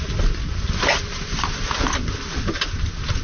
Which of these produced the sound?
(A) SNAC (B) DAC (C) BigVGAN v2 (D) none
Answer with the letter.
D